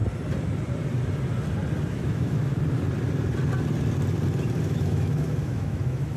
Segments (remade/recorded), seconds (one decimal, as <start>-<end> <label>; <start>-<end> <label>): 0.0-1.9 recorded; 1.9-2.5 remade; 2.5-4.6 recorded; 4.6-6.2 remade